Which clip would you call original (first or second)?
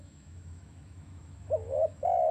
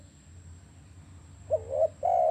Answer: second